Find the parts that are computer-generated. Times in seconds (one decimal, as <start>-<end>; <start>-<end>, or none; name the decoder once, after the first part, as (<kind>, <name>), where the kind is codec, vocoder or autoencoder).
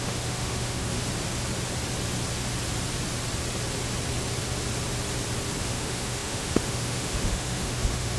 0.0-1.0 (autoencoder, DAC-VAE); 5.6-8.2